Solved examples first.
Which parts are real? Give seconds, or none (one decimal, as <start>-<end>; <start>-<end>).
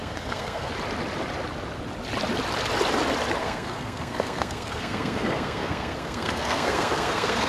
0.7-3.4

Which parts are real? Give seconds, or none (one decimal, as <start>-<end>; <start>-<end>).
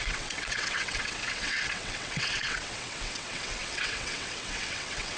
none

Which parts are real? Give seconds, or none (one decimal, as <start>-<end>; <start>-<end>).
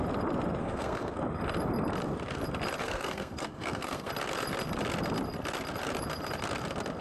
0.0-0.6; 1.2-2.8; 4.1-7.0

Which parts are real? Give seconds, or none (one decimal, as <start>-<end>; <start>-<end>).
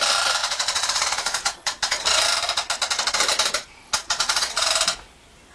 0.0-0.4; 2.2-3.6; 4.7-5.5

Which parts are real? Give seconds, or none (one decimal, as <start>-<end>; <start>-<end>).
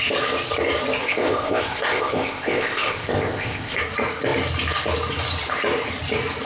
0.0-1.0; 3.8-6.5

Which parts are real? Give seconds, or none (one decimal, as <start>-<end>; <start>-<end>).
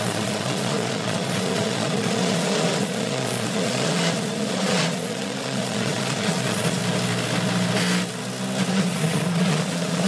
6.8-8.7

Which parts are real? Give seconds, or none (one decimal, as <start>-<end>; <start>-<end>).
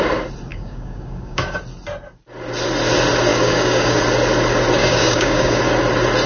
0.0-0.5; 1.6-3.3; 4.0-4.8; 5.6-6.3